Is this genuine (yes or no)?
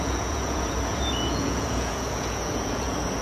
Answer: no